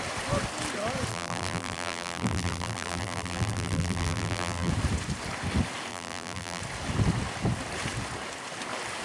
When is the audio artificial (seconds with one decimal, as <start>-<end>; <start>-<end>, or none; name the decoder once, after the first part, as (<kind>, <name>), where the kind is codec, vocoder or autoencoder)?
1.1-4.7 (vocoder, BigVGAN v2); 5.9-6.6